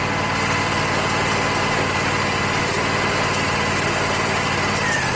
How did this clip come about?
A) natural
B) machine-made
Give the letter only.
A